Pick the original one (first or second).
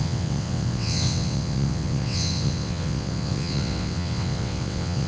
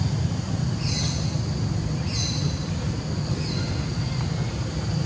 second